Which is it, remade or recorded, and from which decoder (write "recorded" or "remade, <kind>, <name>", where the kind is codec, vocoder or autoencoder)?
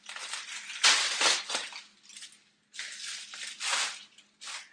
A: recorded